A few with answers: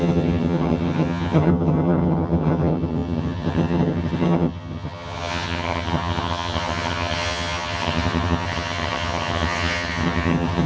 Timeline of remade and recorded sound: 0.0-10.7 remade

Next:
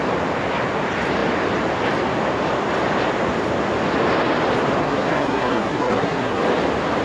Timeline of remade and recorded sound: 0.0-4.8 recorded; 4.8-6.4 remade; 6.4-7.0 recorded